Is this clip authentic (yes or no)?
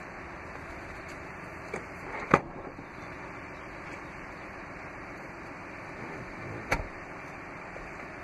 no